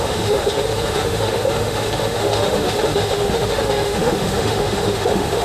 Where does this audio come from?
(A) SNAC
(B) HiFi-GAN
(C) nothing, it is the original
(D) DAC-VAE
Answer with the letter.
D